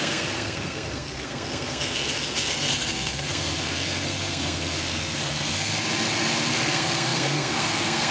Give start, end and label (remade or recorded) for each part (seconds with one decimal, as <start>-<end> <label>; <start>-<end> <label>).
0.0-5.7 remade; 5.7-6.5 recorded; 6.5-8.1 remade